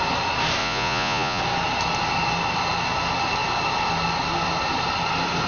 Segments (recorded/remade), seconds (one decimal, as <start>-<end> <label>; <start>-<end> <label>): 0.0-0.6 recorded; 0.6-1.4 remade; 1.4-5.5 recorded